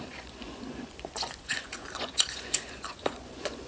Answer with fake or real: fake